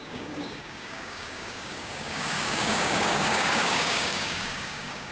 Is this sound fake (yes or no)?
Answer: yes